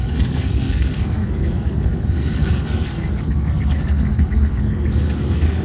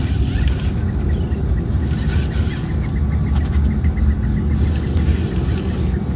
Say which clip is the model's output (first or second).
first